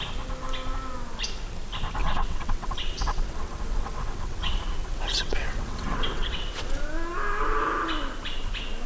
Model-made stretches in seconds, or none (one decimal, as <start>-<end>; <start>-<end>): 2.0-6.8